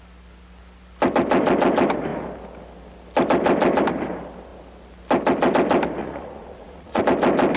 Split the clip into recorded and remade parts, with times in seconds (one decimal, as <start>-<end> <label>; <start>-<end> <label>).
0.0-6.0 recorded; 6.0-7.0 remade; 7.0-7.6 recorded